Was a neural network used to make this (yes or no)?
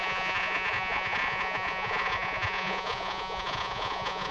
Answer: yes